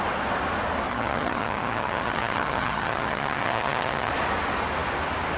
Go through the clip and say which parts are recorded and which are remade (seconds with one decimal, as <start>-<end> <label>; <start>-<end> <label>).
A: 0.0-0.9 recorded; 0.9-4.1 remade; 4.1-5.4 recorded